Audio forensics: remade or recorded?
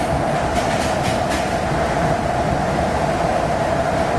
recorded